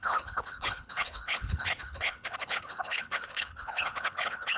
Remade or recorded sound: remade